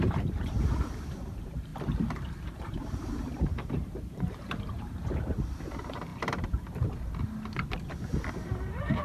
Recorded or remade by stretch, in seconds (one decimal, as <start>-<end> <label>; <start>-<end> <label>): 0.0-1.7 remade; 1.7-2.3 recorded; 2.3-6.1 remade; 6.1-8.3 recorded; 8.3-9.0 remade